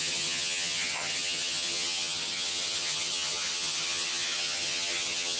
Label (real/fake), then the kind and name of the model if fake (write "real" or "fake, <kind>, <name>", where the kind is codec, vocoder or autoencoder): fake, vocoder, HiFi-GAN